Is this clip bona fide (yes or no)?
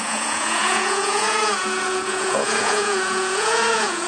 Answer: no